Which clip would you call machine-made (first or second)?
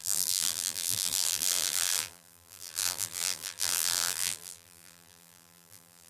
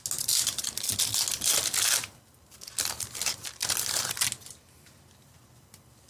first